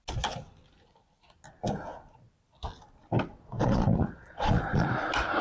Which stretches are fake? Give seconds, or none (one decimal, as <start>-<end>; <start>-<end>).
3.3-4.9